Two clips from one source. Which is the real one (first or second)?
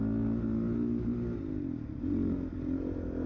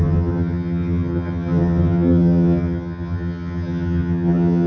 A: first